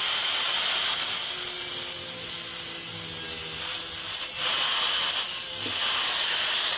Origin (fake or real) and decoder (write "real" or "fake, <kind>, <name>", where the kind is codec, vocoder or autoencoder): real